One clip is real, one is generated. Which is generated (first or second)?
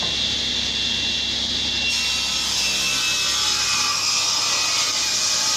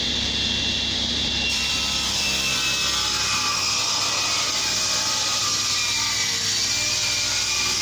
second